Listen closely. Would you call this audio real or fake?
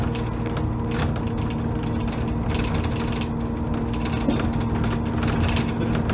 real